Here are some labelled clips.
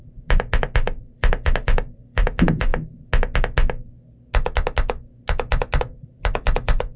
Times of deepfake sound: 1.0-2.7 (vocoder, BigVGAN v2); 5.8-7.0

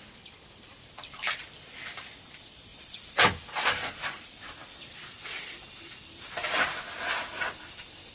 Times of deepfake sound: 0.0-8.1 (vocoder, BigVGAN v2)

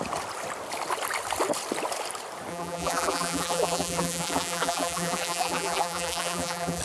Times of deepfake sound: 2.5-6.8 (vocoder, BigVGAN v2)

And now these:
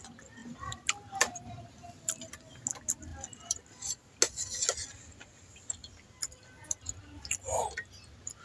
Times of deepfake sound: 0.4-2.3 (vocoder, BigVGAN v2); 3.1-3.6

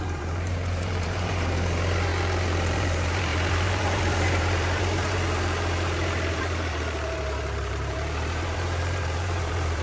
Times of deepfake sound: 0.0-2.1 (vocoder, BigVGAN v2); 2.6-9.8